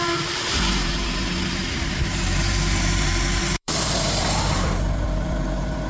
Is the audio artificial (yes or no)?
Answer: yes